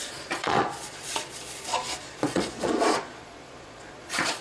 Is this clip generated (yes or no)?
yes